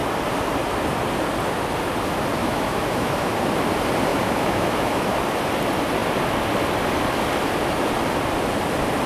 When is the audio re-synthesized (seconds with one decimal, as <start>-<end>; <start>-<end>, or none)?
2.4-3.3; 4.1-5.2